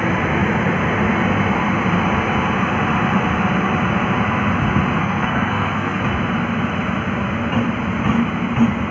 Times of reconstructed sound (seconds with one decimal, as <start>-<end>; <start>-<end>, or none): 5.0-6.0